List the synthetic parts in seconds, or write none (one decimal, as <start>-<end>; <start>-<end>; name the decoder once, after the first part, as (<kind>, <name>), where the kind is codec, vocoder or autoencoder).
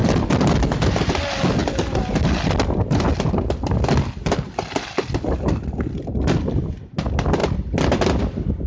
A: none